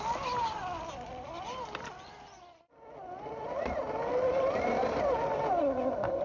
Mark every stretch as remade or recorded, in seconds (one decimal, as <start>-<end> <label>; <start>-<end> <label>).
0.0-6.2 recorded